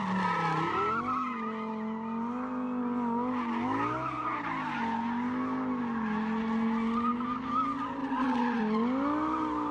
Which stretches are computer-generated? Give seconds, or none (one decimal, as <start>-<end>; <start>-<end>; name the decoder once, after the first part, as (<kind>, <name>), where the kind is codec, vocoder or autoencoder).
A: 8.0-8.6 (vocoder, WaveNeXt)